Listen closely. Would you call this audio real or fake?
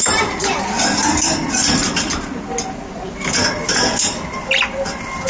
real